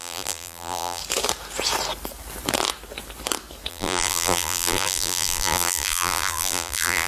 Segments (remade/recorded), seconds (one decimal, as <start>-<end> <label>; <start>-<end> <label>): 0.0-1.0 remade; 1.0-3.7 recorded; 3.7-7.1 remade